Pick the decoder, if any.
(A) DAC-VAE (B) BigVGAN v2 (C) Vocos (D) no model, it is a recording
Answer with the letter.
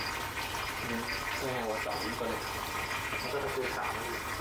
D